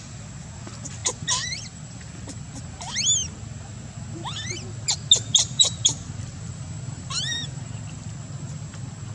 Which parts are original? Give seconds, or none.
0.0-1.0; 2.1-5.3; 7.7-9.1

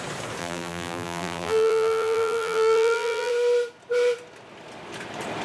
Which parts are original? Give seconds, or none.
0.0-0.4; 3.3-5.4

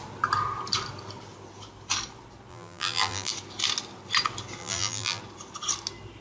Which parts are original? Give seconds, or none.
0.0-2.5; 3.3-4.6; 5.2-6.2